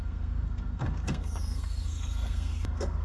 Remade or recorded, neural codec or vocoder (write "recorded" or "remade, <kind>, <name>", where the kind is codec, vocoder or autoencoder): remade, codec, SNAC